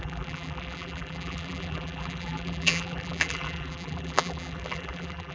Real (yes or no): no